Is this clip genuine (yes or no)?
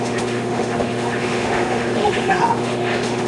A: no